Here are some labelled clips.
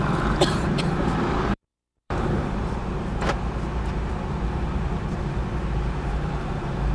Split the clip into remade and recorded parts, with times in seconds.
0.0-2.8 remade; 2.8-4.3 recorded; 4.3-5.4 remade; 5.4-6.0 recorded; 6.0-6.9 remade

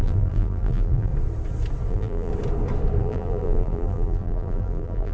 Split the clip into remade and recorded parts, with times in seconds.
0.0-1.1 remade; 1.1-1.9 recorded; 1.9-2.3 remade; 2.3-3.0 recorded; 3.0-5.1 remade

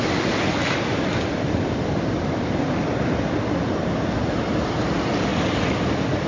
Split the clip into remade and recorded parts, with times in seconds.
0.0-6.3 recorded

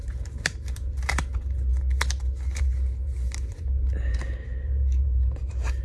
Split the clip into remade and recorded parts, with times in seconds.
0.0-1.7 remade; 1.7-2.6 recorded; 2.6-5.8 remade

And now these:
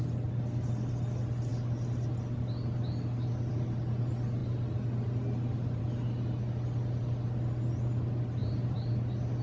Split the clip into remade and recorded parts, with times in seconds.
0.0-8.4 recorded; 8.4-8.9 remade; 8.9-9.4 recorded

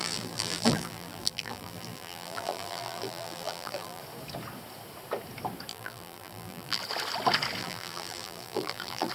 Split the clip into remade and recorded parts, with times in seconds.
0.0-4.0 remade; 4.0-5.7 recorded; 5.7-6.8 remade; 6.8-7.6 recorded; 7.6-9.1 remade